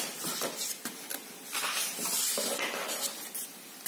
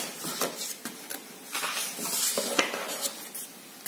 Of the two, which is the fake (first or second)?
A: first